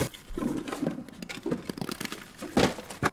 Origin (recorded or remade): recorded